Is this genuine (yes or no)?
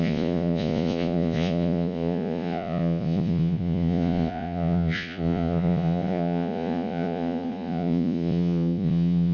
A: no